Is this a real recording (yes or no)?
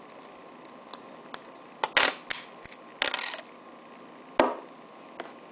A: yes